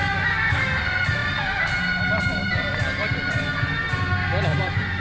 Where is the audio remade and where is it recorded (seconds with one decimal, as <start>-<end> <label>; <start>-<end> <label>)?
0.0-4.5 recorded; 4.5-5.0 remade